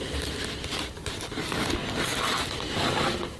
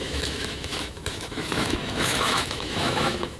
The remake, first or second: second